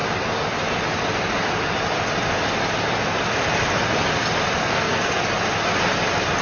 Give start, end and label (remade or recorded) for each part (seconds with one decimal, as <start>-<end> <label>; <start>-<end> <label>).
0.0-4.6 recorded; 4.6-5.2 remade; 5.2-6.4 recorded